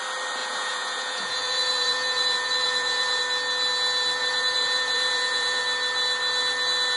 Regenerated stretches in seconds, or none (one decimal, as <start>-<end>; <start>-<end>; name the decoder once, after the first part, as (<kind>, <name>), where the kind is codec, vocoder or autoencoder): 0.4-3.2 (vocoder, Vocos); 4.2-5.6